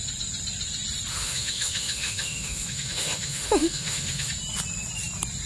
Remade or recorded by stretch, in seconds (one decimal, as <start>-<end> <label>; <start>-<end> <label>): 0.0-1.1 recorded; 1.1-4.3 remade; 4.3-5.5 recorded